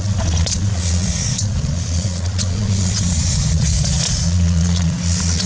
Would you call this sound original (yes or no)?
no